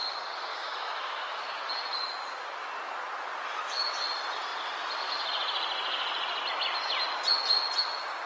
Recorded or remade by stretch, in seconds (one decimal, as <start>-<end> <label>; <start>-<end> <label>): 0.0-0.5 recorded; 0.5-1.4 remade; 1.4-8.3 recorded